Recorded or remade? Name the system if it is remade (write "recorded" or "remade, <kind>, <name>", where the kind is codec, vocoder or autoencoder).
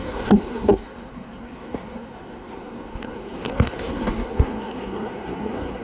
remade, codec, SNAC